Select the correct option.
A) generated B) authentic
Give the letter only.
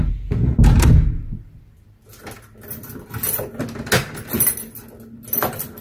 B